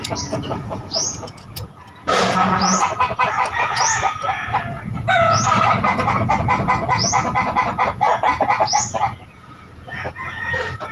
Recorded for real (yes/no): no